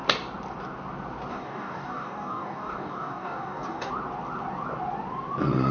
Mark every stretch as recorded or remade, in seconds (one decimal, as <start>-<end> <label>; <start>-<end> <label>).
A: 0.0-1.3 recorded; 1.3-3.9 remade; 3.9-5.7 recorded